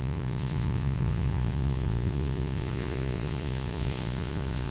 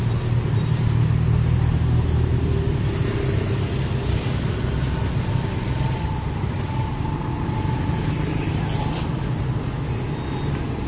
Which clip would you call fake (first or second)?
first